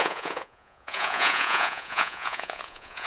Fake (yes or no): yes